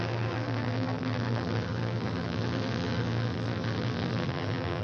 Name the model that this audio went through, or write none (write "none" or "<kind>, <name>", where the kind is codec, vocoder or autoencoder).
vocoder, BigVGAN v2